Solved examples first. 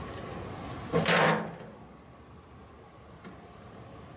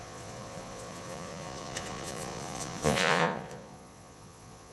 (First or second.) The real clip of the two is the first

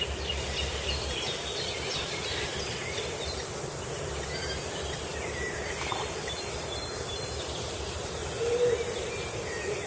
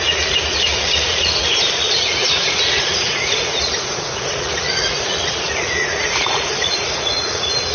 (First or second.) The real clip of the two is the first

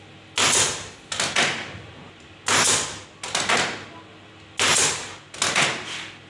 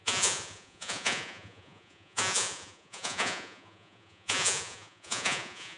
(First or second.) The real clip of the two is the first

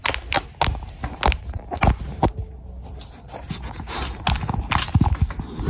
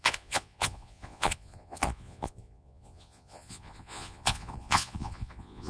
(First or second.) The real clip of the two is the first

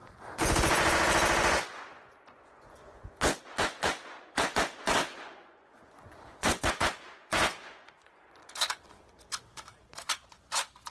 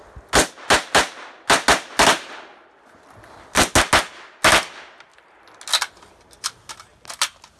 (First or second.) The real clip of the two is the second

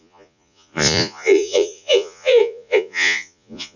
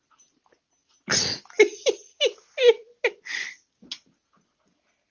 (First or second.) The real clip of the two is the second